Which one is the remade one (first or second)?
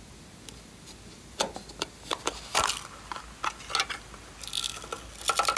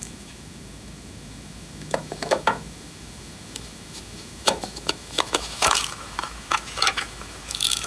second